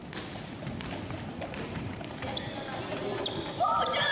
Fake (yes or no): yes